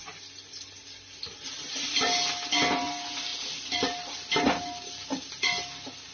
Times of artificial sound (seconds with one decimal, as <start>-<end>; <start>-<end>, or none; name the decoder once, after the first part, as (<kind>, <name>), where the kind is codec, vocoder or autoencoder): none